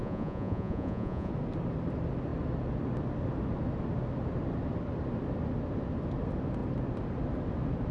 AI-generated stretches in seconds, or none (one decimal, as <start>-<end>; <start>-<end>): 0.0-1.3